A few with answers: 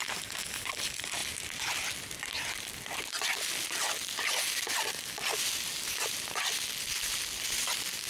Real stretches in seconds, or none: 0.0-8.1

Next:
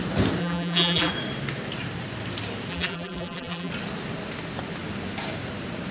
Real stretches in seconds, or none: 0.0-0.4; 1.1-2.7; 3.7-5.9